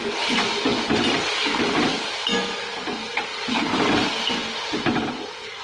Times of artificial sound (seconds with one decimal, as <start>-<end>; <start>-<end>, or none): none